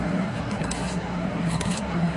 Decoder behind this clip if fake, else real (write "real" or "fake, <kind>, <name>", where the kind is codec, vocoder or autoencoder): fake, codec, SNAC